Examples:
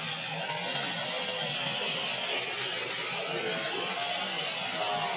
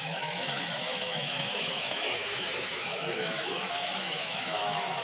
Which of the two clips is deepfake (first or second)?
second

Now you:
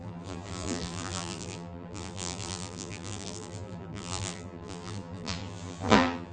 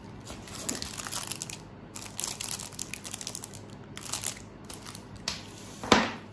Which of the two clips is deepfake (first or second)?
first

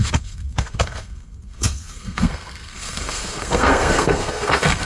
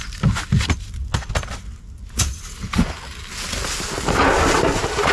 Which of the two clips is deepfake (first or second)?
first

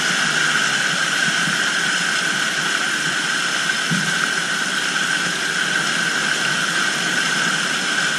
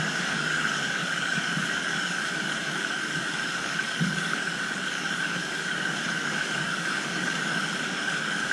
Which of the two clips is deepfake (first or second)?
second